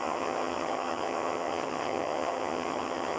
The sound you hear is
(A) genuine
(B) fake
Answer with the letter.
B